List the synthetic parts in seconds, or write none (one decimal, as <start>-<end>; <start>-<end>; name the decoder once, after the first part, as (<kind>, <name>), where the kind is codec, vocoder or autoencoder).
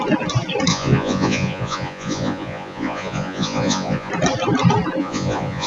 0.7-4.1 (vocoder, Vocos); 5.0-5.7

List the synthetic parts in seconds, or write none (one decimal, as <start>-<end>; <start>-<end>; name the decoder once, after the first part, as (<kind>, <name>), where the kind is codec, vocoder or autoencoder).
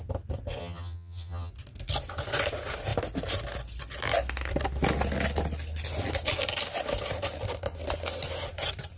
0.6-1.5 (vocoder, HiFi-GAN)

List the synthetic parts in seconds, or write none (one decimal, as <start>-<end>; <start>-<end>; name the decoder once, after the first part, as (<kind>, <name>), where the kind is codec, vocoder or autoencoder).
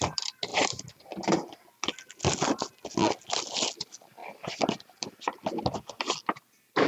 0.5-1.6 (vocoder, BigVGAN v2); 4.2-5.6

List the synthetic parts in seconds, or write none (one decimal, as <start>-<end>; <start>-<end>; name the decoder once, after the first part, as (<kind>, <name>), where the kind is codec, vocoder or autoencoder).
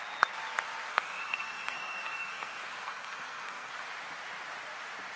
0.9-3.7 (codec, SNAC)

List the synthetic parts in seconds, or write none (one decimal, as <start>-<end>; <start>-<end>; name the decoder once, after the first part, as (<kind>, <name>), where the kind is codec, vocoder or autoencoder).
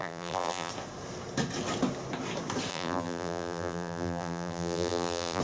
0.0-0.7 (vocoder, BigVGAN v2); 2.7-5.4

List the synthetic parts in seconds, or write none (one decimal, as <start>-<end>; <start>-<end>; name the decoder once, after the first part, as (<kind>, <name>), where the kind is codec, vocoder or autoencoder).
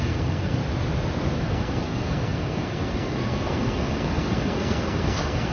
0.0-0.6 (codec, SNAC); 1.4-5.5